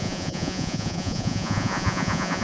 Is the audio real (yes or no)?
no